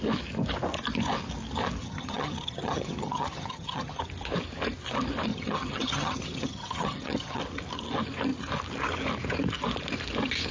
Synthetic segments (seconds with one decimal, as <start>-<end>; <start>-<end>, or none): 1.8-4.0; 5.3-7.4